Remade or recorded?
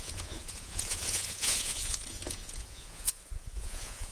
remade